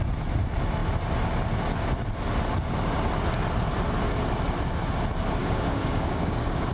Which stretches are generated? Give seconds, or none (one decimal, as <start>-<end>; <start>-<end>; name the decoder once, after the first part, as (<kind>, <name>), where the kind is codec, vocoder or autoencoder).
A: 5.4-6.7 (codec, DAC)